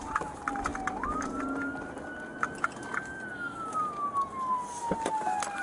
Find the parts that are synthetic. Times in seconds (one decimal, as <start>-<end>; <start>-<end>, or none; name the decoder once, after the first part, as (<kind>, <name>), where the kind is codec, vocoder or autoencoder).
none